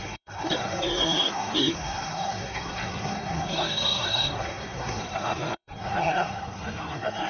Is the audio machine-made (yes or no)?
yes